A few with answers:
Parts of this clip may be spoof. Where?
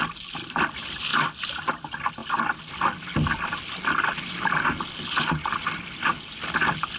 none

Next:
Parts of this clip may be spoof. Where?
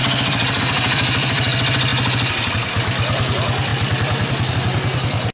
0.0-1.9; 2.5-5.3